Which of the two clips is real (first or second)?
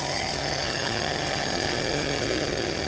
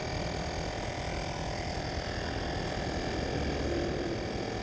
second